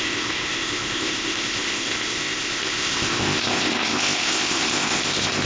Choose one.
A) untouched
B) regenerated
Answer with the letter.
B